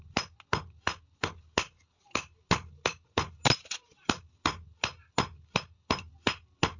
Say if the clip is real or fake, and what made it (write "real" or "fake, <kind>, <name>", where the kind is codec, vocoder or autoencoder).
real